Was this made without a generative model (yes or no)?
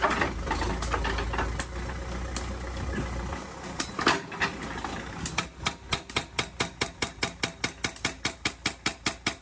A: yes